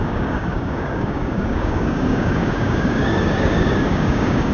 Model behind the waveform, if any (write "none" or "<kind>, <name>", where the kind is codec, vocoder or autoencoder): codec, DAC